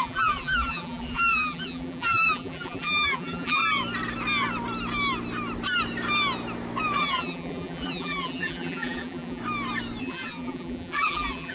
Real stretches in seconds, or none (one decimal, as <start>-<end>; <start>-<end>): 3.6-7.0; 9.4-10.0